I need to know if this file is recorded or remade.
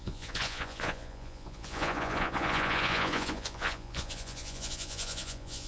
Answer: remade